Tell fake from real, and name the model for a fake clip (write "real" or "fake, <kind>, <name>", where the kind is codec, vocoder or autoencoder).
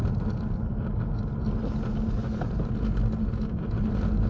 real